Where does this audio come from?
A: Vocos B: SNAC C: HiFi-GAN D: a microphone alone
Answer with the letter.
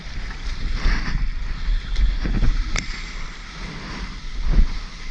D